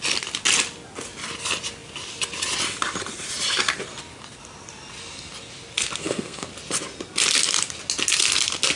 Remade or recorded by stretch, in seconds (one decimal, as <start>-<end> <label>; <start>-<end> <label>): 0.0-6.0 recorded; 6.0-6.5 remade; 6.5-8.8 recorded